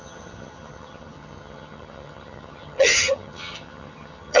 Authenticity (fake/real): fake